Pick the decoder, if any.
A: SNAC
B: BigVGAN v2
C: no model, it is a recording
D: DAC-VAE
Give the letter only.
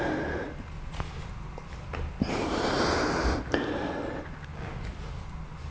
C